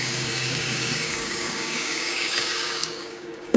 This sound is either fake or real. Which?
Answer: fake